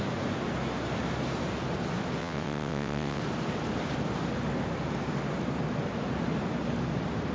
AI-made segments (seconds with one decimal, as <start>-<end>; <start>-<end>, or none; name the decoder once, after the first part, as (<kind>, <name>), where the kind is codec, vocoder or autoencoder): 2.2-3.2 (vocoder, WaveNeXt)